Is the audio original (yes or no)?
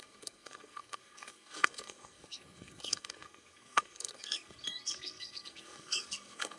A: no